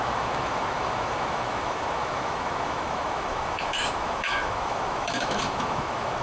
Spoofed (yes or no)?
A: yes